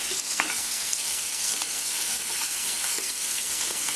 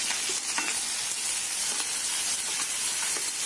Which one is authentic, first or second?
second